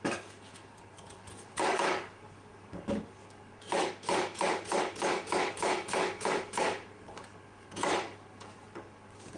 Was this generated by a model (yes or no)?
yes